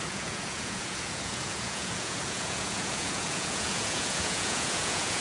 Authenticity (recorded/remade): remade